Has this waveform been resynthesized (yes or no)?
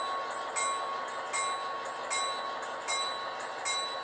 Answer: no